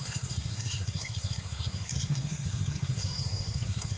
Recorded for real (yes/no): no